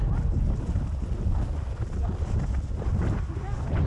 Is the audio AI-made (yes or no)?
no